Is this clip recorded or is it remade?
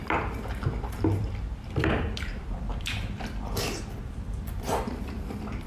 remade